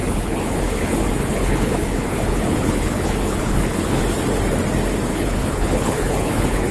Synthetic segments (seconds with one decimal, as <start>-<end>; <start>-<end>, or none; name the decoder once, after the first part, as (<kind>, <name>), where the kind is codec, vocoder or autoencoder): 0.0-4.0 (codec, HILCodec); 5.1-6.7